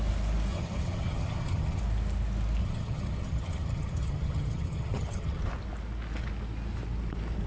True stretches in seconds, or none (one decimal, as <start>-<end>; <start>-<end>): 0.0-0.5; 1.8-2.6; 5.4-7.5